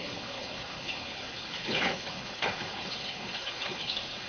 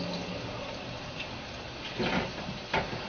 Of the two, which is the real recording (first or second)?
second